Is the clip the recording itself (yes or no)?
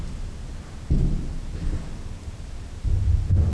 yes